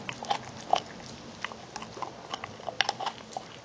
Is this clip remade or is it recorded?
recorded